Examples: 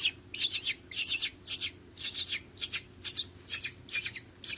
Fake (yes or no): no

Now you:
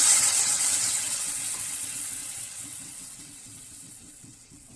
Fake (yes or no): yes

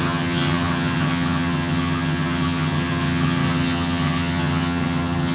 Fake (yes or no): yes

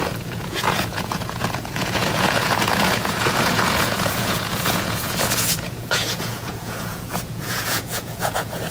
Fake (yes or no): yes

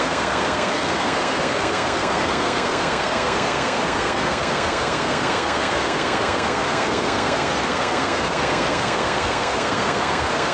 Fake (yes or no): yes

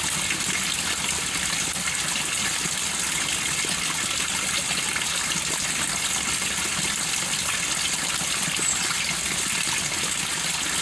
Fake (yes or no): no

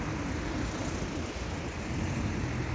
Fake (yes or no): no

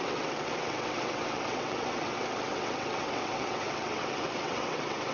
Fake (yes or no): yes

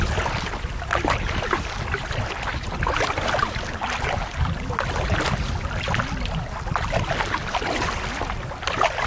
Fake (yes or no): no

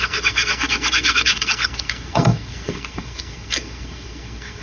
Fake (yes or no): yes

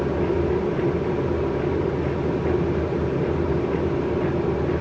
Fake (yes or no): no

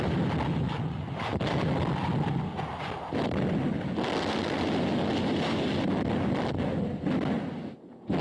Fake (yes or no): no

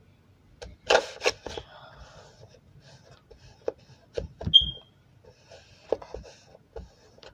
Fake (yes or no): no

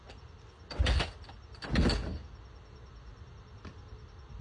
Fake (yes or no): no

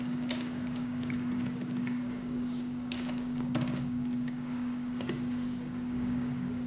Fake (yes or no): yes